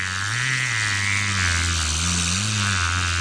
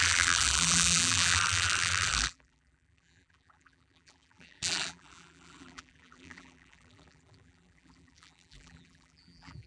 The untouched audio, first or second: first